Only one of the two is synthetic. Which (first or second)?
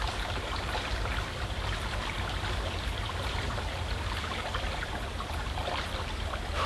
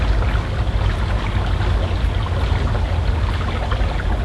first